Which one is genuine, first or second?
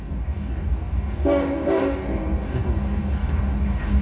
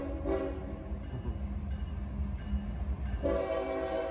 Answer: second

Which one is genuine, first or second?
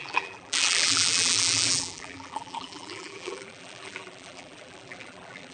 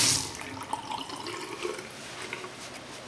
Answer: second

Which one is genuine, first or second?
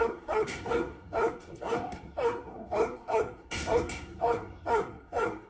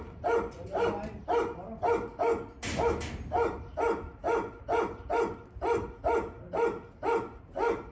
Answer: second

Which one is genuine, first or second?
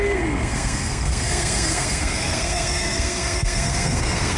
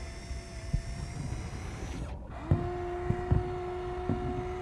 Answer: second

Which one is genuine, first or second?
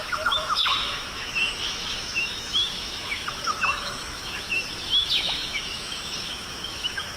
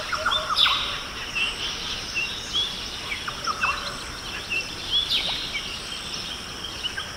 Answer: second